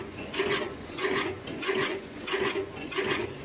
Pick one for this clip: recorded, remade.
remade